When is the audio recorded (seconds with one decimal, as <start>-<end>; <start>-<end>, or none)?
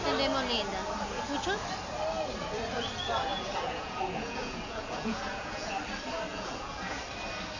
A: 0.0-3.3; 5.7-6.3; 7.0-7.6